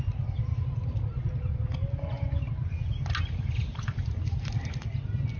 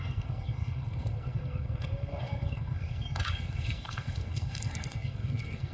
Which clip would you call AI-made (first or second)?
second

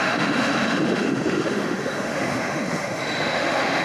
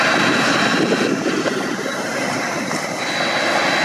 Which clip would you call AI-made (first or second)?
first